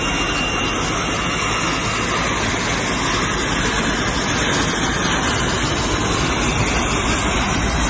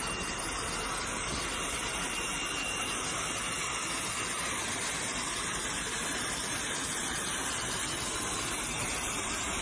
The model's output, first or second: second